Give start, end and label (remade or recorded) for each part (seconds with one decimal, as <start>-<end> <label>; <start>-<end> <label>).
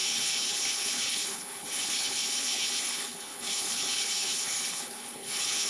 0.0-5.7 remade